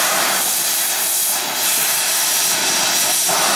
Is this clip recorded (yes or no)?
yes